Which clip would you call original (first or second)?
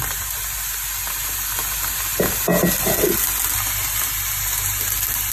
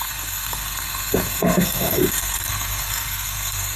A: first